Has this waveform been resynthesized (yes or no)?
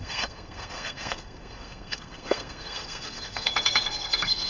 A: yes